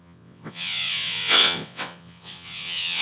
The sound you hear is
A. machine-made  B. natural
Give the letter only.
A